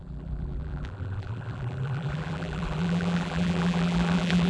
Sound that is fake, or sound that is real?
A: fake